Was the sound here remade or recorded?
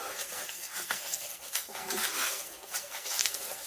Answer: remade